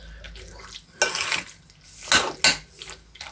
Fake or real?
real